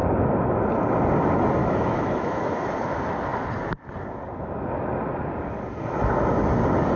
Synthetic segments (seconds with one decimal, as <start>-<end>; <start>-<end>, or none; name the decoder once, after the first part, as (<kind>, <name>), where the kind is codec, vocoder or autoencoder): 1.6-2.7 (autoencoder, DAC-VAE)